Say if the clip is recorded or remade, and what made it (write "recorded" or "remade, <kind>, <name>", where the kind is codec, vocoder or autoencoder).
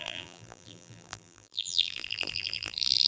remade, vocoder, BigVGAN v2